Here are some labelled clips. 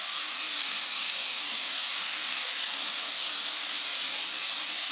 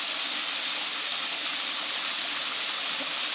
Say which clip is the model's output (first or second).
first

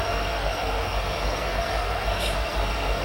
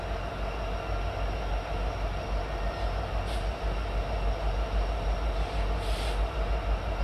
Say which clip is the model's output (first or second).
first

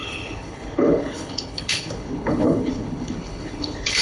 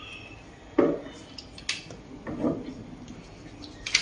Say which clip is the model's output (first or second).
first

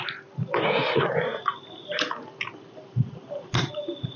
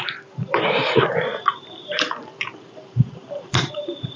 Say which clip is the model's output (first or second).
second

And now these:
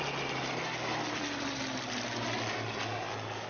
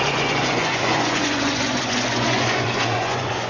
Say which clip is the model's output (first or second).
second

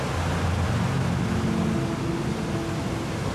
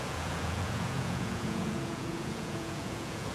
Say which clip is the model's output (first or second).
second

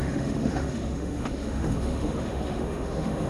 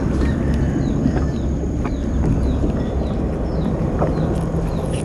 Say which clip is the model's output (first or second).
first